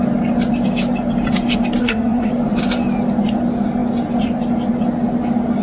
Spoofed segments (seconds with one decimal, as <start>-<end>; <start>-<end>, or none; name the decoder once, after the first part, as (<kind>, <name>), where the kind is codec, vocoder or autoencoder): 1.8-2.3 (codec, SNAC)